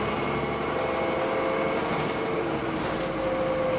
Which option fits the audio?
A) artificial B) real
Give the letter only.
B